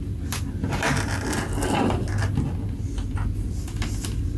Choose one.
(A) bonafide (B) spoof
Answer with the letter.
A